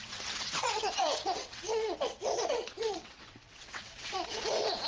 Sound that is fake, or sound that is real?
fake